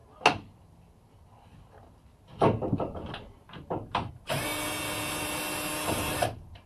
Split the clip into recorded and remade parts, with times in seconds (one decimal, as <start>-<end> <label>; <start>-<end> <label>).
0.0-3.4 recorded; 3.4-4.5 remade; 4.5-5.9 recorded; 5.9-6.7 remade